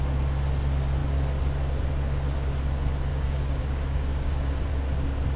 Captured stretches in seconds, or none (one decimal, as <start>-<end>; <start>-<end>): 0.0-3.1; 4.7-5.4